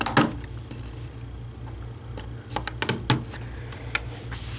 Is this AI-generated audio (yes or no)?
no